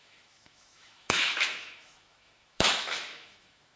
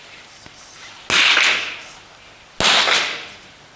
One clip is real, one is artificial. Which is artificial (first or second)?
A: first